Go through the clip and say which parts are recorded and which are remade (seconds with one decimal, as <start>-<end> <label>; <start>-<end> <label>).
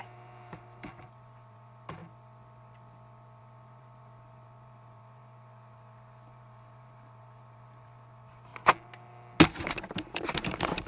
0.0-2.0 remade; 2.0-3.4 recorded; 3.4-8.5 remade; 8.5-9.6 recorded; 9.6-10.9 remade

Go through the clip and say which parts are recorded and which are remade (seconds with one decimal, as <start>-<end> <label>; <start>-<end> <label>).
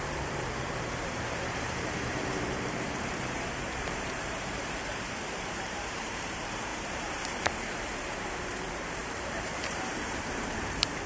0.0-11.1 remade